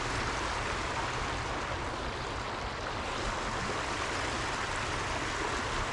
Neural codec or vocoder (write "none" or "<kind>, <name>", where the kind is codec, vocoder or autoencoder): none